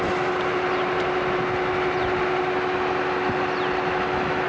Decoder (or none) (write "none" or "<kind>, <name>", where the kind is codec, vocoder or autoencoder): none